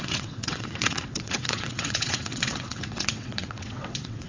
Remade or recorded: remade